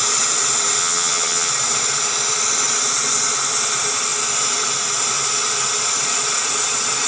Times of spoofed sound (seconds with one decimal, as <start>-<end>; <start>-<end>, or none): 0.8-1.5

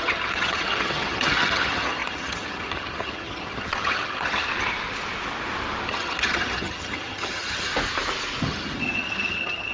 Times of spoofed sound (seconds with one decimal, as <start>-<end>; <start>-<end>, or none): 0.0-4.5; 5.9-7.7; 8.4-9.7

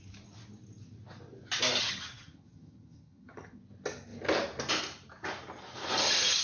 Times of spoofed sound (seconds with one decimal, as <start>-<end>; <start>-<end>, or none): 1.8-3.6

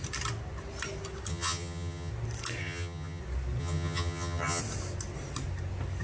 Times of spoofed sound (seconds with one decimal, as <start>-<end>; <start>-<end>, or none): 1.3-2.1; 2.6-3.2; 3.6-4.6